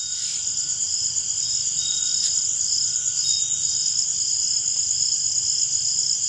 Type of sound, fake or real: real